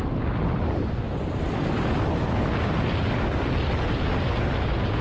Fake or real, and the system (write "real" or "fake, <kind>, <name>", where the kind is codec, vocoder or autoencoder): real